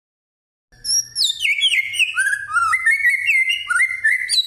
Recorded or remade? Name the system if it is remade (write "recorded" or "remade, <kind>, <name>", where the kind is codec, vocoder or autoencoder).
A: recorded